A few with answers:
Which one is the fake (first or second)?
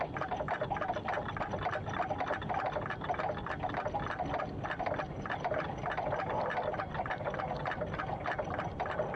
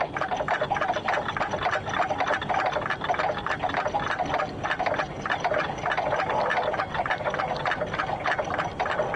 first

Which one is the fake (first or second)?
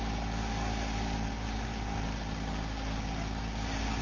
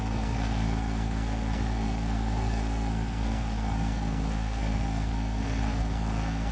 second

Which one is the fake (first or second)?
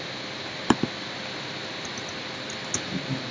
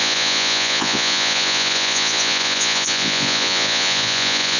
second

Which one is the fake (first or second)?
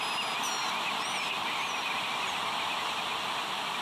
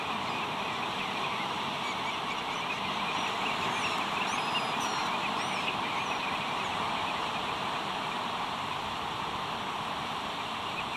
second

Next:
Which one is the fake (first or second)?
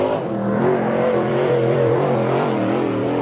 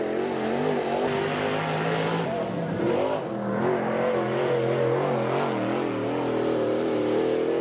first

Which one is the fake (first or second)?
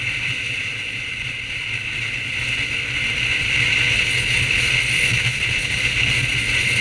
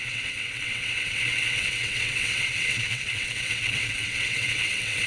second